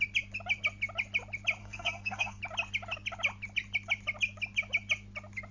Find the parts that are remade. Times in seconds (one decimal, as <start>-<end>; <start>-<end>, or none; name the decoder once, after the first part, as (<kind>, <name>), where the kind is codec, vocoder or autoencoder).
1.6-2.4 (codec, SNAC)